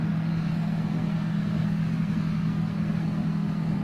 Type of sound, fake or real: fake